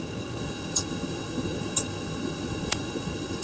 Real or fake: fake